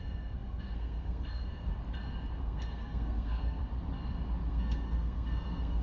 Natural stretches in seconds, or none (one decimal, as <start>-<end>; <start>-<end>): 1.7-2.4; 3.6-4.5